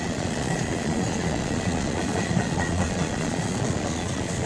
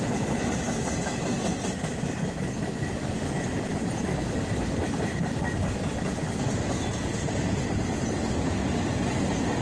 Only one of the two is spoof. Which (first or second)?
first